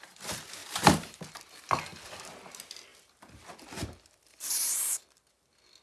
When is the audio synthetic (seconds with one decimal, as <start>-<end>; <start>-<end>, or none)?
0.6-1.2